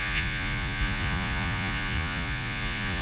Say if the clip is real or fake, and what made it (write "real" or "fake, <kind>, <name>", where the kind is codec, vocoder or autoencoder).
fake, vocoder, Vocos